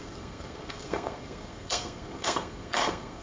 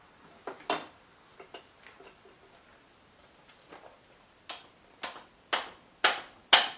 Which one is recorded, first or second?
second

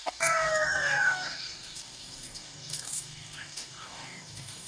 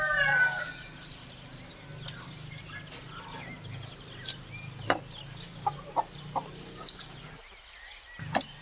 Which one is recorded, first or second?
second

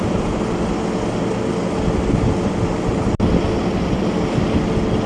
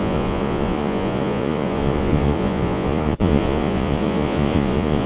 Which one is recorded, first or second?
first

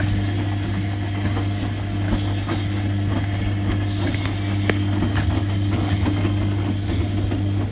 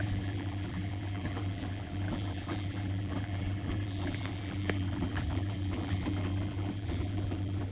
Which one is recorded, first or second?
first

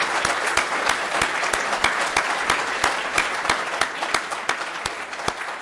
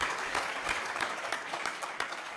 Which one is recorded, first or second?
first